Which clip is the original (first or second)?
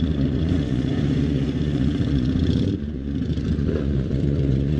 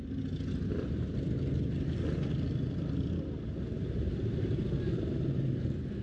second